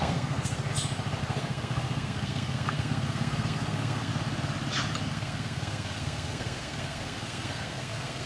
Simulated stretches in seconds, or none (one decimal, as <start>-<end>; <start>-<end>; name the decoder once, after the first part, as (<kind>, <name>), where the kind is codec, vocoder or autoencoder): 0.0-0.7 (codec, SNAC); 1.2-4.1; 5.1-8.3